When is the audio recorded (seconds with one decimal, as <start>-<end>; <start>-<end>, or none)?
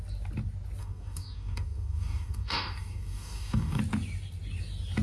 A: 0.0-0.8; 3.8-5.0